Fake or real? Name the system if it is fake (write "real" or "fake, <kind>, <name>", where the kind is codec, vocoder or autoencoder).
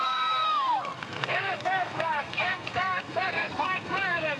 fake, codec, SNAC